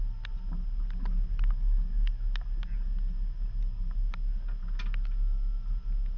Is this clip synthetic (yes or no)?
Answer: no